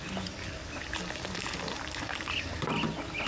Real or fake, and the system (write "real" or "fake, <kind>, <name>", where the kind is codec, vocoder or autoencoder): real